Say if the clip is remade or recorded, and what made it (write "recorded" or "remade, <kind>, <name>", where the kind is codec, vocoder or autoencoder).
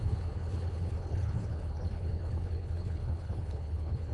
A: remade, codec, HILCodec